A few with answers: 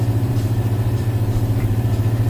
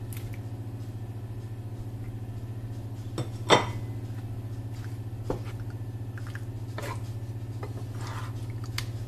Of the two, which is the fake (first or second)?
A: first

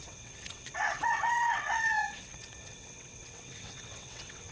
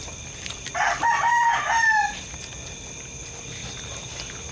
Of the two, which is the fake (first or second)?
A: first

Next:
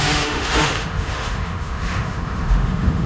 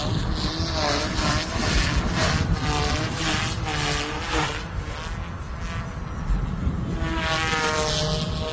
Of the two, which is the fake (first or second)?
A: first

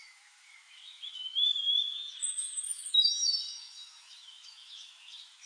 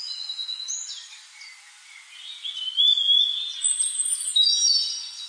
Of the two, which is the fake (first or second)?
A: first